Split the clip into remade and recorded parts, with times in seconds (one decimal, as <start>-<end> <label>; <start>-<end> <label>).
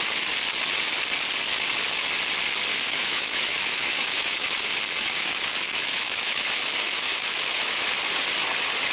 0.0-2.7 recorded; 2.7-7.8 remade; 7.8-8.9 recorded